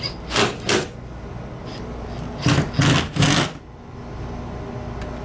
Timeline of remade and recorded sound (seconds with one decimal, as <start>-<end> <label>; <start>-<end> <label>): 0.0-5.2 recorded

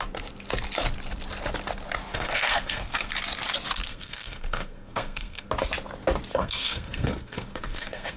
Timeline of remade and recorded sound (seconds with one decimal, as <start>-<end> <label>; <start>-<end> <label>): 0.0-2.1 recorded; 2.1-3.1 remade; 3.1-3.9 recorded; 3.9-5.5 remade; 5.5-6.3 recorded; 6.3-8.2 remade

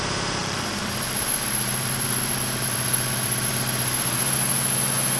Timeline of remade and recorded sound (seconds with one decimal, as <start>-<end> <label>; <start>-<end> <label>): 0.0-0.4 recorded; 0.4-3.5 remade; 3.5-5.2 recorded

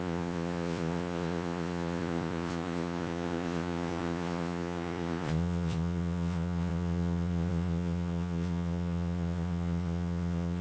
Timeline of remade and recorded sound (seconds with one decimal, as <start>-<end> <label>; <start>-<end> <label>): 0.0-10.6 remade

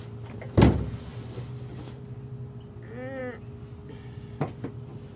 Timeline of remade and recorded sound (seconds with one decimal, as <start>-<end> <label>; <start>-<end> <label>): 0.0-5.2 recorded

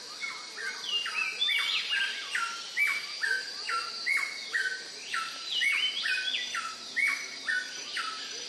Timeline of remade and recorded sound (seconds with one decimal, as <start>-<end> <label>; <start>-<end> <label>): 0.0-4.4 recorded; 4.4-5.7 remade; 5.7-8.5 recorded

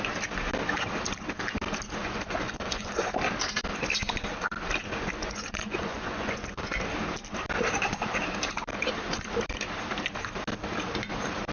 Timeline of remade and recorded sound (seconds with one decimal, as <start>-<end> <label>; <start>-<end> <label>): 0.0-2.0 recorded; 2.0-2.9 remade; 2.9-5.2 recorded; 5.2-6.7 remade; 6.7-11.5 recorded

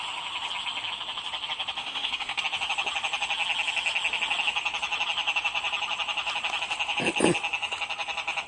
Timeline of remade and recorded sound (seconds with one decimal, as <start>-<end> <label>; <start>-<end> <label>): 0.0-1.8 recorded; 1.8-2.4 remade; 2.4-8.5 recorded